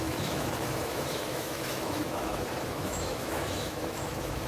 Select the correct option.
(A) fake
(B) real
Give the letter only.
A